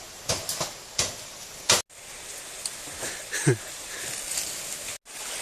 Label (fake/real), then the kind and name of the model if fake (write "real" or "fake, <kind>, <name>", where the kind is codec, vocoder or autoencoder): real